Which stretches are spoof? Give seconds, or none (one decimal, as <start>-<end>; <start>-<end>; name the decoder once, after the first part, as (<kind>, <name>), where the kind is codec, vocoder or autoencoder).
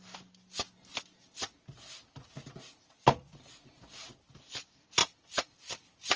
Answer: 5.0-5.6 (vocoder, Vocos)